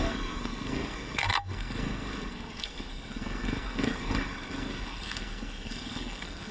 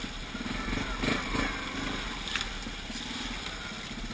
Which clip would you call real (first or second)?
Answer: second